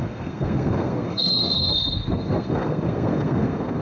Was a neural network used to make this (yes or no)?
yes